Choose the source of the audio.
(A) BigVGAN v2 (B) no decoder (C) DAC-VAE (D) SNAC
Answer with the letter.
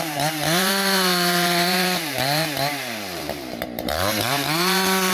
A